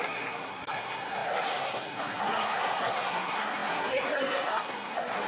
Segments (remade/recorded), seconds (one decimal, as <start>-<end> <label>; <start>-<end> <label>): 0.0-5.3 remade